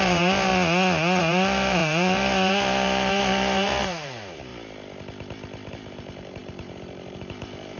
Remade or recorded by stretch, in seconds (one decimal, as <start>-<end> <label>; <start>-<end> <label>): 0.0-0.5 remade; 0.5-1.2 recorded; 1.2-4.5 remade; 4.5-5.7 recorded; 5.7-7.8 remade